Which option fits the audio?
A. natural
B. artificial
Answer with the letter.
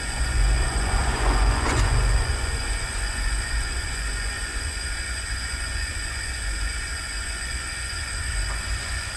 B